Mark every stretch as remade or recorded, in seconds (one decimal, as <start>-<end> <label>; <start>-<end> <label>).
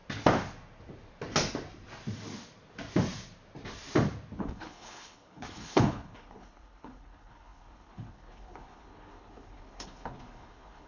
0.0-4.4 recorded; 4.4-10.9 remade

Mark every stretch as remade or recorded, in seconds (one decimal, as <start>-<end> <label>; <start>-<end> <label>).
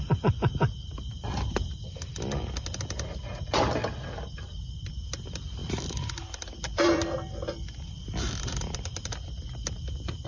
0.0-5.6 recorded; 5.6-8.8 remade; 8.8-10.3 recorded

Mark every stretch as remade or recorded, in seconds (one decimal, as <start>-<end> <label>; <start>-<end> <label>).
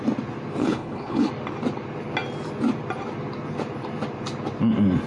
0.0-0.6 recorded; 0.6-1.3 remade; 1.3-5.1 recorded